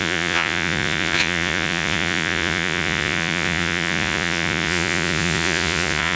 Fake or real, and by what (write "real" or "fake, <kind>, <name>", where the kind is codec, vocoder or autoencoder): fake, vocoder, Vocos